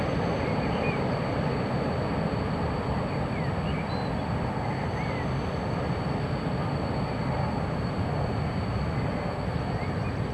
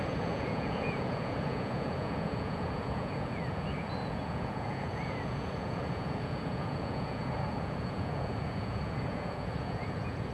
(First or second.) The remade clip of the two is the second